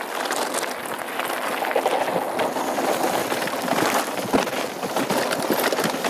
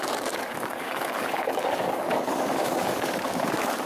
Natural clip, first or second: first